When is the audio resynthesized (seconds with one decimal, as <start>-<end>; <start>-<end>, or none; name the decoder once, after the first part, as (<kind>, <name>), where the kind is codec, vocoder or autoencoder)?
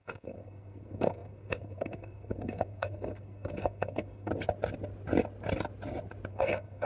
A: 0.0-4.3 (codec, SNAC); 6.3-6.9